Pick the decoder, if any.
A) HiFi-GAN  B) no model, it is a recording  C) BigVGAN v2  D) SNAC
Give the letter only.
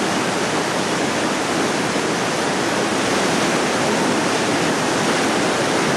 B